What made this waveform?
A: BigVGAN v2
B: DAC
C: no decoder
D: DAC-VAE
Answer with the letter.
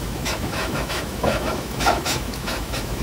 D